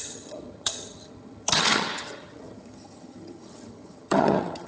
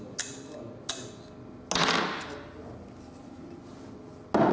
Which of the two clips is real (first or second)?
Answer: second